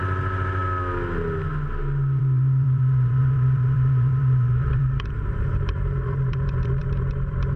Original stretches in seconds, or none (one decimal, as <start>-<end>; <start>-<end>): 0.6-2.2